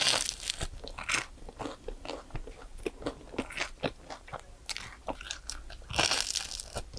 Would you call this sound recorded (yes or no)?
yes